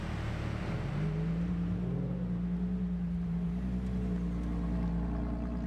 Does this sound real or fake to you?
real